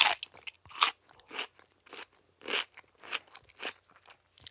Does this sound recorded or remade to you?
recorded